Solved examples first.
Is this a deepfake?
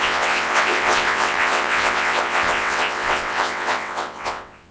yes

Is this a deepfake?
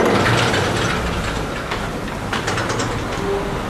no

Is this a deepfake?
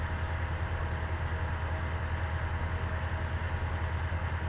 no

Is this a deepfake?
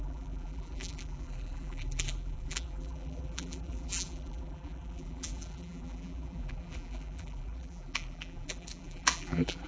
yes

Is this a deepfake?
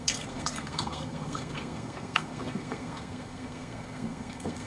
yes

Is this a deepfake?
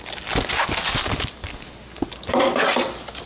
no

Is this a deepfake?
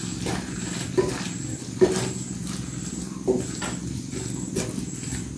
no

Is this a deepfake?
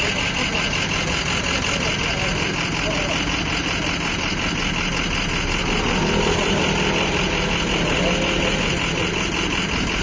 no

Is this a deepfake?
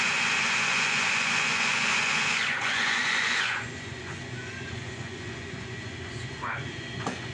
yes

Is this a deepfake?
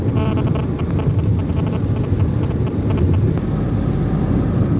yes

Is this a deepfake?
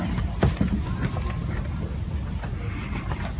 no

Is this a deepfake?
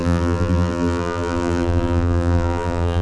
yes